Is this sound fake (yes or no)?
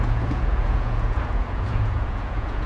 yes